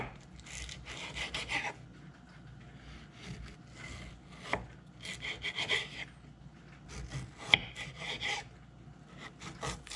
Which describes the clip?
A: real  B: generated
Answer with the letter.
A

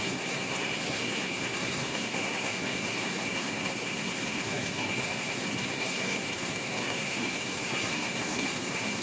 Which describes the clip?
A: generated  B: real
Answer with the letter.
A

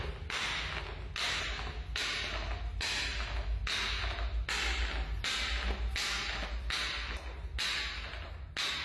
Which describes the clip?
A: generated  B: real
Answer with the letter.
B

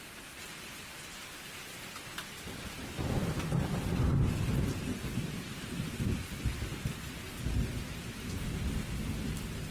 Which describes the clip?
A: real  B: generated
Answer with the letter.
A